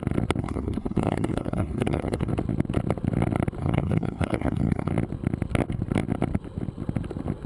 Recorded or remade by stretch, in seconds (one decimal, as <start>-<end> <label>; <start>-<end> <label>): 0.0-0.4 recorded; 0.4-2.3 remade; 2.3-3.6 recorded; 3.6-4.9 remade; 4.9-7.5 recorded